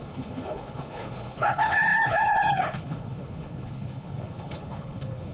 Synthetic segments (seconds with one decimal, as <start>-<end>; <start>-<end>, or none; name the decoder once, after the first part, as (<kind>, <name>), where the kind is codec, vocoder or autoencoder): 0.0-5.3 (codec, HILCodec)